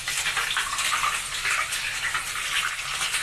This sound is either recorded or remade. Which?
recorded